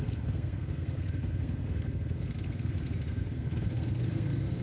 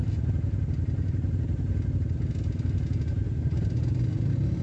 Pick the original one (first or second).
second